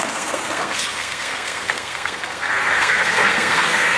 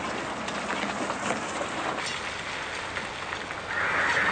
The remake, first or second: first